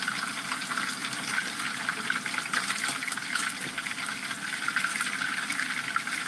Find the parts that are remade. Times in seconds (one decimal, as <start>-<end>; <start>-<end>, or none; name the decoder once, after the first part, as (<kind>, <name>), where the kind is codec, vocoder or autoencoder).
none